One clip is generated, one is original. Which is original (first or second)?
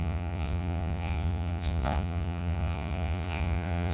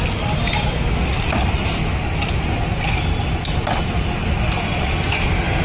second